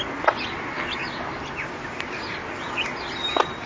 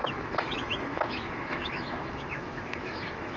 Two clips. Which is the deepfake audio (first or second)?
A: second